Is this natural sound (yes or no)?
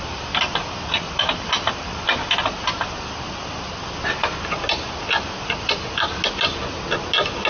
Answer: yes